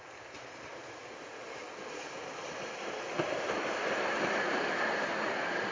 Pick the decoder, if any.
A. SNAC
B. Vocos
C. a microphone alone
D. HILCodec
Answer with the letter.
C